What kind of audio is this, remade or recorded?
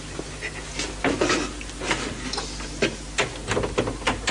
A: recorded